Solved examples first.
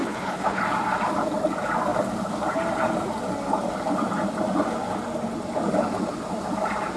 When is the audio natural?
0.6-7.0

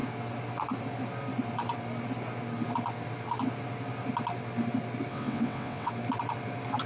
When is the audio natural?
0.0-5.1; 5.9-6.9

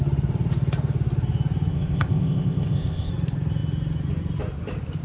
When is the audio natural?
0.0-1.7; 3.1-5.0

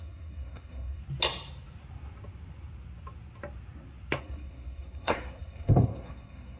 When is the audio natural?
1.0-4.2